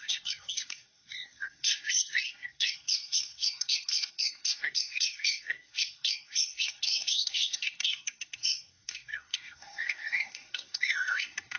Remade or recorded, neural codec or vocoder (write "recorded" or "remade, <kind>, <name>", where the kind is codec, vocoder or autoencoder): remade, codec, SNAC